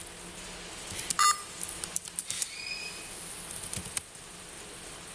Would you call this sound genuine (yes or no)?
yes